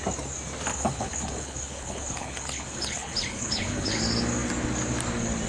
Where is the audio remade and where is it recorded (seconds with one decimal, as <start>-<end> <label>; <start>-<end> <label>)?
0.0-0.7 recorded; 0.7-4.0 remade; 4.0-5.5 recorded